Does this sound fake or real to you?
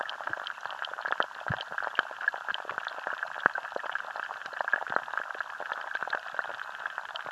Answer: real